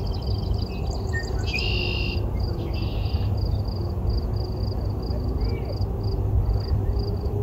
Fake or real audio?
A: real